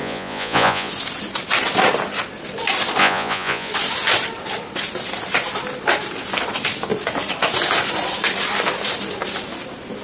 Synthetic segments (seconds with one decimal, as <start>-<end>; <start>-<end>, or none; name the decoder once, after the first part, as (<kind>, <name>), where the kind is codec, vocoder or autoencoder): 0.0-0.9 (vocoder, Vocos); 3.0-3.7